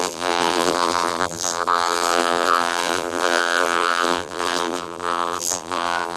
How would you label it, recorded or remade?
remade